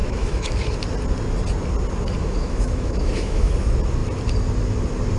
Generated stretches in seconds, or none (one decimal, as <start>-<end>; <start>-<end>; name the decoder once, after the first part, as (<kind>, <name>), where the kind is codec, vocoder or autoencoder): 0.0-0.7 (autoencoder, DAC-VAE); 2.2-3.5